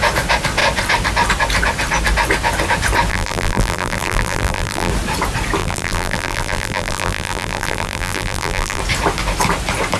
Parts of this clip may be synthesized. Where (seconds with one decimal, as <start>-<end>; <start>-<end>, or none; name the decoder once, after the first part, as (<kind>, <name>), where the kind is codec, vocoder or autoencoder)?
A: 3.1-4.9 (vocoder, BigVGAN v2); 5.6-8.8